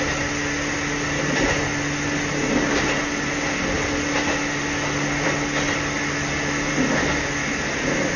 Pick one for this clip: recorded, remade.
recorded